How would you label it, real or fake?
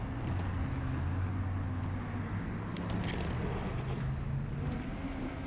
real